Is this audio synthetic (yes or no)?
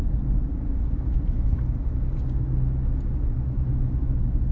no